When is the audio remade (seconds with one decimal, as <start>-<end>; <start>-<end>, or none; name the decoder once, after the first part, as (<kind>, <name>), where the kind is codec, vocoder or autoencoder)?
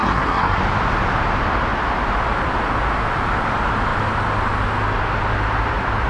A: 0.0-0.6 (codec, SNAC)